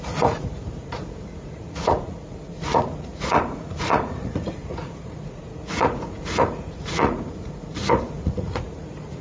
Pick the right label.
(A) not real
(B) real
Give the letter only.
A